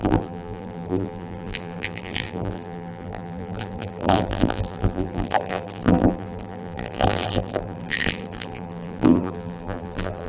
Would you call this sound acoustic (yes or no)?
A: no